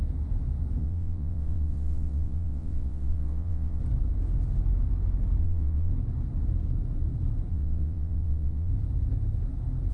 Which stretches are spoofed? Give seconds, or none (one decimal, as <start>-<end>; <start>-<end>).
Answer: 0.8-3.8; 5.4-5.9; 7.5-8.7